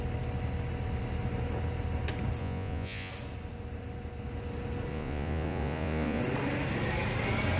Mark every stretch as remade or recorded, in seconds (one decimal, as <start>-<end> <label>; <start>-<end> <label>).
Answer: 0.0-2.4 recorded; 2.4-3.1 remade; 3.1-4.9 recorded; 4.9-6.2 remade; 6.2-7.6 recorded